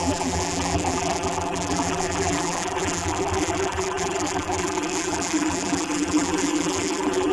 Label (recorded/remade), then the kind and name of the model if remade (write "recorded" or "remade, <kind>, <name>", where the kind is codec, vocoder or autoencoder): remade, vocoder, BigVGAN v2